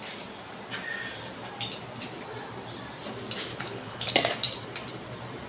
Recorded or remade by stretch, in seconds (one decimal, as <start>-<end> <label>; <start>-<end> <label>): 0.0-3.5 recorded; 3.5-4.1 remade; 4.1-5.5 recorded